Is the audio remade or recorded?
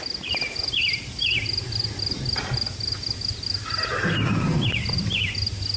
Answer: recorded